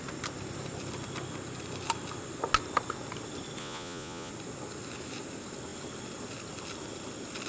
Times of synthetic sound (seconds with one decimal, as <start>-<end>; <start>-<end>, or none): 3.6-4.3